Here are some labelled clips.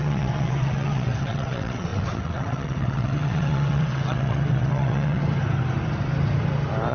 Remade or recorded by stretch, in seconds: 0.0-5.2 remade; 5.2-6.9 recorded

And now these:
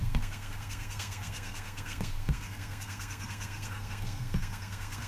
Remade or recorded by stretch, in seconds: 0.0-5.1 remade

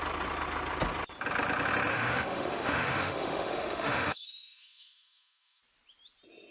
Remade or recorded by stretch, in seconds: 0.0-1.9 recorded; 1.9-5.6 remade; 5.6-6.5 recorded

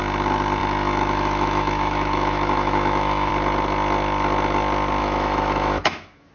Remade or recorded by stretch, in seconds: 0.0-0.6 recorded; 0.6-3.3 remade; 3.3-5.0 recorded; 5.0-6.3 remade